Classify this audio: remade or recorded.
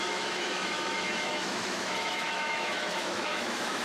remade